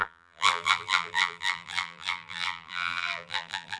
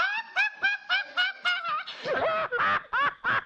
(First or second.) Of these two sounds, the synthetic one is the first